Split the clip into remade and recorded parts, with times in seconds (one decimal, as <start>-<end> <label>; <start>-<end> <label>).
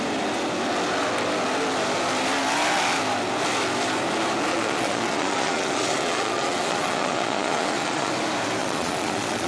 0.0-4.5 recorded; 4.5-8.1 remade; 8.1-8.6 recorded; 8.6-9.5 remade